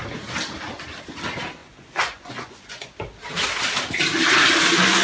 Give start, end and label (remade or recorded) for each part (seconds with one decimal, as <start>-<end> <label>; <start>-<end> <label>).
0.0-1.6 recorded; 1.6-2.9 remade; 2.9-5.0 recorded